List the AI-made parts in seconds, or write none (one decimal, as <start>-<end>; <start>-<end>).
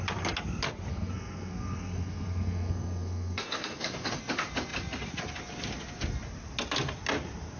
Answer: 0.9-4.2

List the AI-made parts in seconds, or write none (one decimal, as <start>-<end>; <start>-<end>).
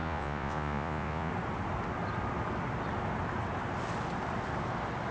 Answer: 0.0-1.3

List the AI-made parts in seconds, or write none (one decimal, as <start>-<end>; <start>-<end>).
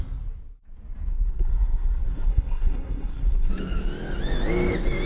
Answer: 1.1-3.5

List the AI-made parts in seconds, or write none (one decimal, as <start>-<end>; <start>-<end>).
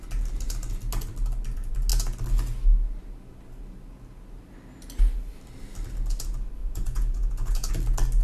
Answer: 6.6-7.7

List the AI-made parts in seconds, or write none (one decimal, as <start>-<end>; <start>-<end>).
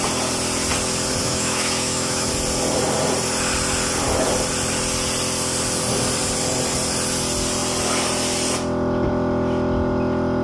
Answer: 1.2-2.3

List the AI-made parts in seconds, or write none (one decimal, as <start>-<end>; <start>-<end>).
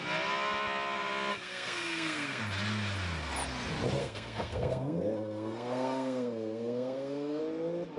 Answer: 1.3-2.4; 4.0-7.4